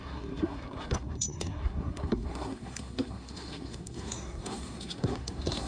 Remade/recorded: remade